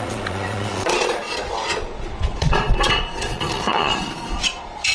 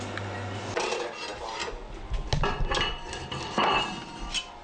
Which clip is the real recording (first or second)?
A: second